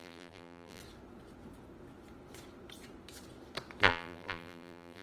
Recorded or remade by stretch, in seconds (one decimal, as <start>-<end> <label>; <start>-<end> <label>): 0.0-0.8 remade; 0.8-3.8 recorded; 3.8-5.0 remade